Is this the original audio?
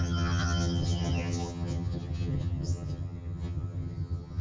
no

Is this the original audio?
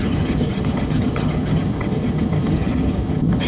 no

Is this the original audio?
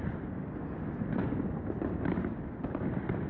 yes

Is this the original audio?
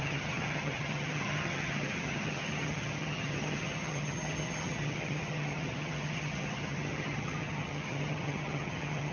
no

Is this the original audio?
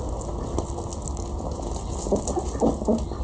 yes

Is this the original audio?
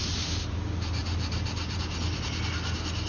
yes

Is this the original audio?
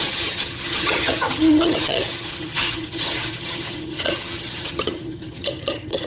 no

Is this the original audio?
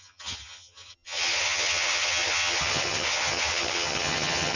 no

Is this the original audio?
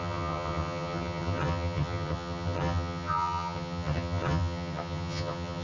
no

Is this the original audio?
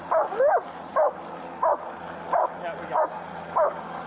yes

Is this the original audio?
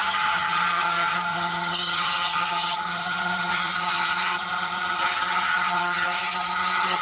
no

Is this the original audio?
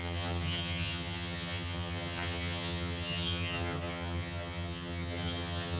no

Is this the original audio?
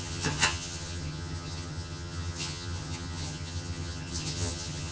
no